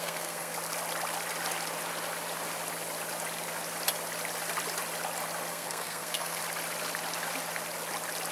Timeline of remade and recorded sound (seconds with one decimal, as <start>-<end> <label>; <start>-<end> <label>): 0.0-0.5 remade; 0.5-5.5 recorded; 5.5-6.4 remade; 6.4-8.3 recorded